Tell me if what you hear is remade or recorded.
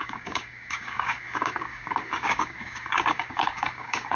remade